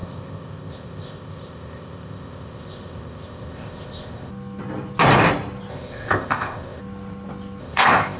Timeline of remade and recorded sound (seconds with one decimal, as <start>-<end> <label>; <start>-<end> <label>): 0.0-4.3 remade; 4.3-5.7 recorded; 5.7-6.8 remade; 6.8-7.6 recorded; 7.6-8.2 remade